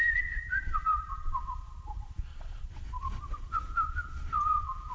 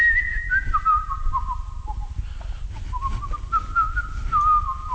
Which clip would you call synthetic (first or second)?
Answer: first